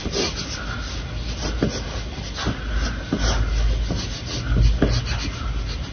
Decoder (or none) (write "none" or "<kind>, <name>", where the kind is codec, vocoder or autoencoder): none